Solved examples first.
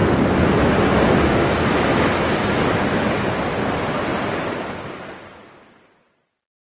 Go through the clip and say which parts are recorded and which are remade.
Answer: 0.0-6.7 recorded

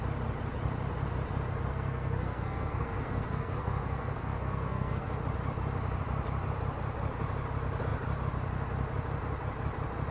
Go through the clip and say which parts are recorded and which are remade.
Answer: 0.0-1.7 recorded; 1.7-5.2 remade; 5.2-10.1 recorded

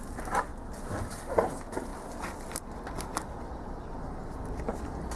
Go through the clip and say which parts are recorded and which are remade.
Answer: 0.0-5.2 recorded

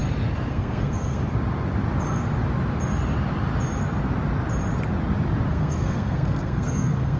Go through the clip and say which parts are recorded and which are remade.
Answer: 0.0-0.5 recorded; 0.5-1.2 remade; 1.2-5.5 recorded; 5.5-7.2 remade

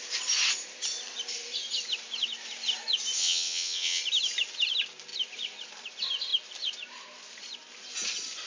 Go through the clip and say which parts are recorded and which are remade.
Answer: 0.0-3.2 recorded; 3.2-4.0 remade; 4.0-8.5 recorded

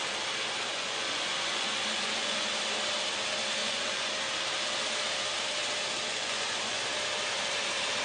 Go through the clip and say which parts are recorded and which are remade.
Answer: 0.0-0.7 recorded; 0.7-2.5 remade; 2.5-3.6 recorded; 3.6-4.1 remade; 4.1-6.1 recorded; 6.1-6.8 remade; 6.8-8.0 recorded

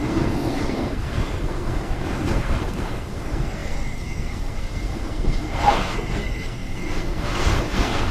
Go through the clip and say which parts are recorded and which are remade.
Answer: 0.0-8.1 remade